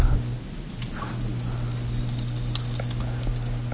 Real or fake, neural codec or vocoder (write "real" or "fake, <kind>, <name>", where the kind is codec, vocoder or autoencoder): real